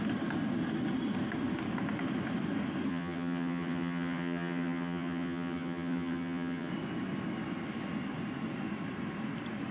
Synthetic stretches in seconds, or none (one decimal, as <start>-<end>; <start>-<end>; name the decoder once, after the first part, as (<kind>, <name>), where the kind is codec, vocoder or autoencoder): 2.9-6.7 (vocoder, HiFi-GAN)